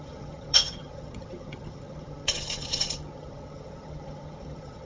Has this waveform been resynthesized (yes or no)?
yes